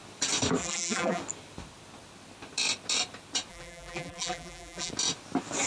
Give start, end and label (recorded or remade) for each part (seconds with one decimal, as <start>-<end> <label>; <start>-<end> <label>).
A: 0.0-0.6 recorded; 0.6-1.2 remade; 1.2-3.5 recorded; 3.5-4.9 remade; 4.9-5.7 recorded